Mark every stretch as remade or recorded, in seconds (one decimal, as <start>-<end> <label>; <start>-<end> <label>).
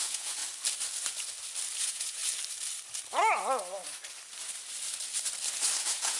0.0-0.4 remade; 0.4-1.8 recorded; 1.8-2.2 remade; 2.2-5.8 recorded; 5.8-6.2 remade